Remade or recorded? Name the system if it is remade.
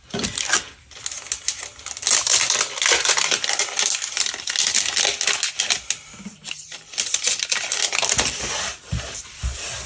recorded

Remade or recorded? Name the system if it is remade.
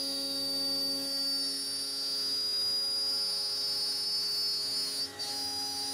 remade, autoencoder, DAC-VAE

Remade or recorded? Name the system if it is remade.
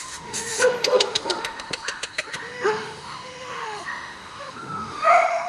remade, autoencoder, DAC-VAE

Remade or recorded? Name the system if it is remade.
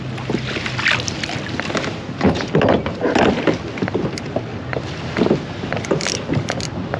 recorded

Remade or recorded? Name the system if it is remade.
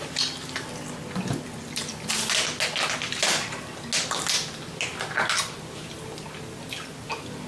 recorded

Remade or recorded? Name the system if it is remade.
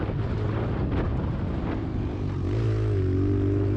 recorded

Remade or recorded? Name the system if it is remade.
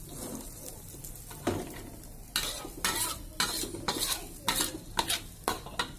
recorded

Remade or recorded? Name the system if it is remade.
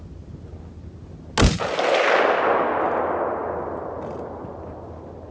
recorded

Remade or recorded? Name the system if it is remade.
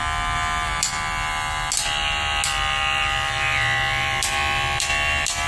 recorded